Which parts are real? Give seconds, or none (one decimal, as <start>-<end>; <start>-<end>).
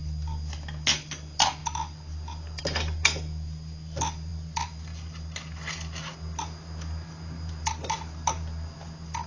0.0-9.3